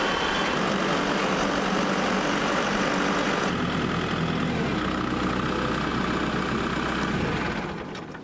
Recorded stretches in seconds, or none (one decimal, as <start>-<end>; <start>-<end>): 0.0-5.9; 6.6-8.2